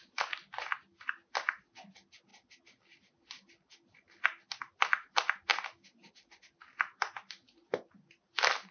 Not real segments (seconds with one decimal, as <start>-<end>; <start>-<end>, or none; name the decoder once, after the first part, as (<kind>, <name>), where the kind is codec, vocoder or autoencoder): none